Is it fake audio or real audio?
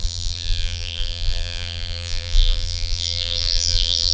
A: fake